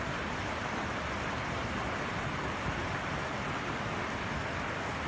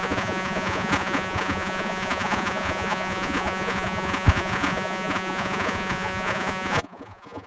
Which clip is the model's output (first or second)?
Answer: second